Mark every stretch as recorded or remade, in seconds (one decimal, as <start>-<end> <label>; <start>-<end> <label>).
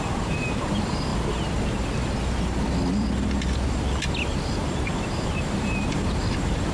0.0-1.1 remade; 1.1-5.1 recorded; 5.1-6.7 remade